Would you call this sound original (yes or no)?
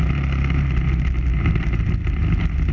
yes